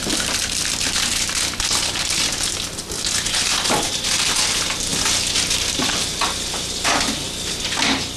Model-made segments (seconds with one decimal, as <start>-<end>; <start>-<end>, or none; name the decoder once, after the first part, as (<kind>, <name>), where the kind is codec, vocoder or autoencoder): none